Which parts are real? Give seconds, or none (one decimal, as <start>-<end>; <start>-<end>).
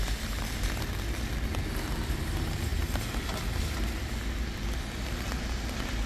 0.0-6.1